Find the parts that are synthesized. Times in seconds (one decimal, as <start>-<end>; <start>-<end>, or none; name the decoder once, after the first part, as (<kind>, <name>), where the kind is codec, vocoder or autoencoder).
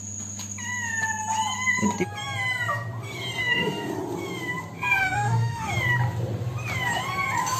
3.4-3.9 (autoencoder, DAC-VAE); 5.0-5.7